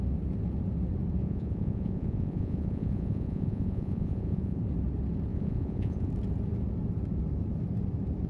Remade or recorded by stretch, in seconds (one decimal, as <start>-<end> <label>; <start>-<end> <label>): 0.0-1.2 recorded; 1.2-4.6 remade; 4.6-5.3 recorded; 5.3-6.1 remade; 6.1-8.3 recorded